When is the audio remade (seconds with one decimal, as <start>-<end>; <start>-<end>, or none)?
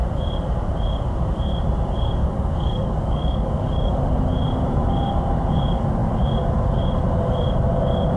2.2-4.0